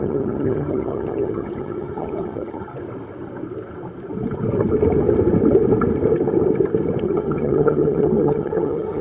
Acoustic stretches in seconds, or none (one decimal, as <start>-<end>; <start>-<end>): 2.7-7.0